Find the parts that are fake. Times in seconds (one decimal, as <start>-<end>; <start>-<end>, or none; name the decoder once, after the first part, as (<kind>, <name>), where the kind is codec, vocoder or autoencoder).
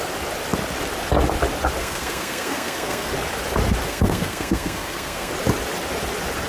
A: 1.8-3.1 (codec, SNAC); 3.9-5.3